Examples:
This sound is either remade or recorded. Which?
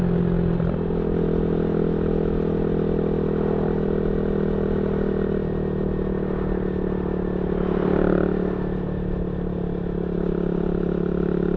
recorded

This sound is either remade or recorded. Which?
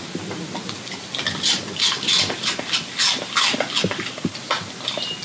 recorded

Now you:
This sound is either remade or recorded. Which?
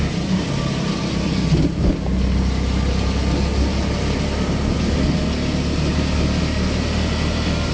recorded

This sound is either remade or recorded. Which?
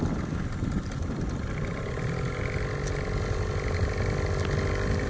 recorded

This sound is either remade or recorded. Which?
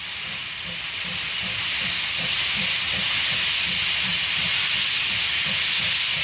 recorded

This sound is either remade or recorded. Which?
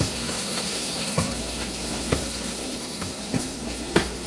remade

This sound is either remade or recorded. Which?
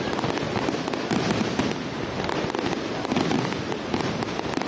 recorded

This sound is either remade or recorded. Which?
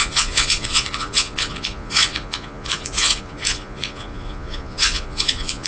remade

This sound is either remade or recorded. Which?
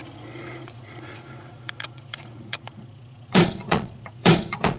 remade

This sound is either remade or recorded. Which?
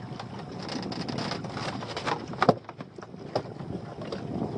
recorded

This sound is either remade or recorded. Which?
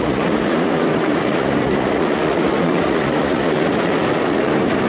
remade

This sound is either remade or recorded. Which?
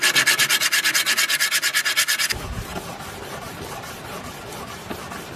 recorded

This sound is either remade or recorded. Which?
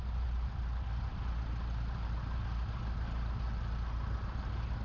recorded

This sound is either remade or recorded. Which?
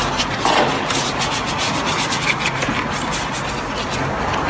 recorded